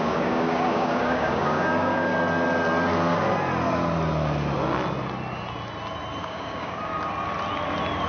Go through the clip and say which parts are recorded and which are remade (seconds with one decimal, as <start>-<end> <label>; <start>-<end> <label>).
0.0-2.1 remade; 2.1-6.2 recorded; 6.2-6.9 remade; 6.9-8.1 recorded